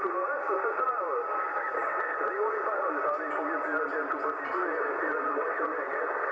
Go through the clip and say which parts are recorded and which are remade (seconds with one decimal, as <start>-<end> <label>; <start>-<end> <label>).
0.0-1.8 recorded; 1.8-2.8 remade; 2.8-4.6 recorded; 4.6-6.3 remade